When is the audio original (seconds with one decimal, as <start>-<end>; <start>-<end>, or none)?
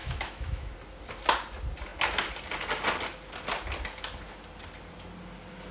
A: 0.7-5.7